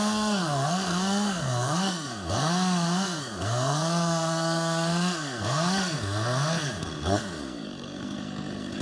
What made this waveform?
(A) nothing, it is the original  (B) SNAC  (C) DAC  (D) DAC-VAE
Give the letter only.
B